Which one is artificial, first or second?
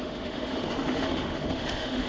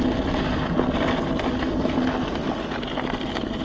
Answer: first